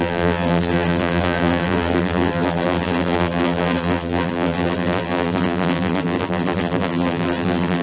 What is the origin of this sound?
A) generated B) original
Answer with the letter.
A